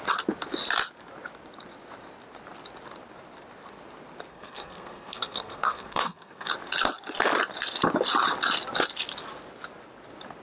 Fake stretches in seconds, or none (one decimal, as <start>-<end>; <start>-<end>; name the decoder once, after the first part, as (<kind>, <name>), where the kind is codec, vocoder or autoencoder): 4.3-6.5 (codec, SNAC)